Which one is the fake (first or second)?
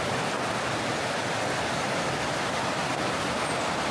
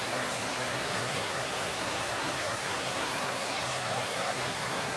second